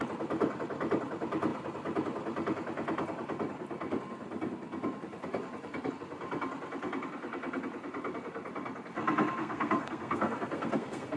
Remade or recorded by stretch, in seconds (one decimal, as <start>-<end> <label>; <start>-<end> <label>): 0.0-9.4 recorded; 9.4-11.2 remade